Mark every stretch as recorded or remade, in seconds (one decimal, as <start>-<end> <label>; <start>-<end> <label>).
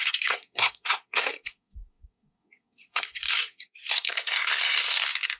0.0-5.4 remade